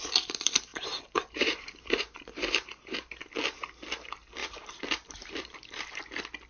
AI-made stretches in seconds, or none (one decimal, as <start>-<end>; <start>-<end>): 0.7-3.3; 4.4-6.0